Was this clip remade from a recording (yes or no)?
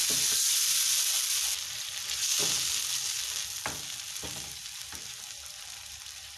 no